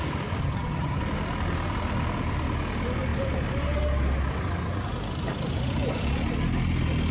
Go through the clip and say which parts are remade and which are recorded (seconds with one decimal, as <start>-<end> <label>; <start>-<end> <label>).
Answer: 0.0-0.4 recorded; 0.4-1.0 remade; 1.0-7.1 recorded